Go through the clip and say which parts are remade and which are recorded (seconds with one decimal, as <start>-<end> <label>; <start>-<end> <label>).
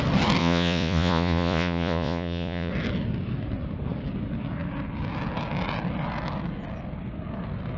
0.0-0.4 recorded; 0.4-2.7 remade; 2.7-7.8 recorded